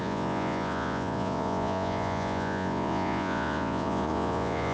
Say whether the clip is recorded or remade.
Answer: remade